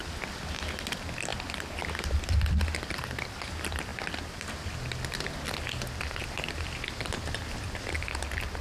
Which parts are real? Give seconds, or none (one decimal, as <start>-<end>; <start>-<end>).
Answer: 0.0-8.6